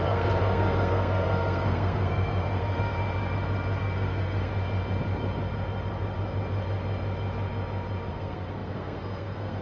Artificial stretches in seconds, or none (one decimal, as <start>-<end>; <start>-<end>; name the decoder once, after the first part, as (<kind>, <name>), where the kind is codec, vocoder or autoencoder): 0.0-2.9 (codec, SNAC); 3.8-4.5; 8.1-9.6